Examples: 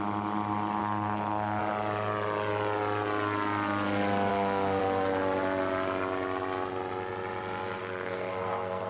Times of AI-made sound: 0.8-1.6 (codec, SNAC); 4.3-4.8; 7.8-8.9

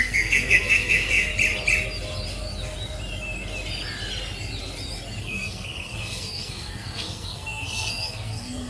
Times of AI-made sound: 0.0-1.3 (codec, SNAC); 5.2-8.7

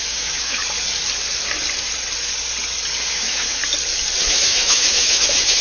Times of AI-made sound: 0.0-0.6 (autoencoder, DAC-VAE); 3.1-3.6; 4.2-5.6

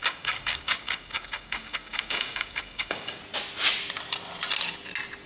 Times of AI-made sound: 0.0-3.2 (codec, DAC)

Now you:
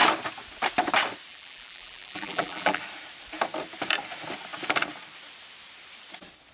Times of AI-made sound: 1.3-2.8 (vocoder, BigVGAN v2)

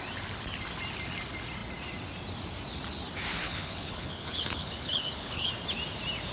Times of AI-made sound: 3.4-5.5 (codec, HILCodec)

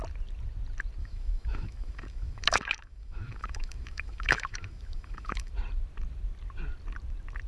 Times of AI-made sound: 1.0-5.5 (autoencoder, DAC-VAE)

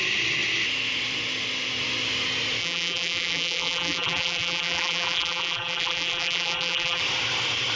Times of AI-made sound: 2.6-7.0 (vocoder, BigVGAN v2)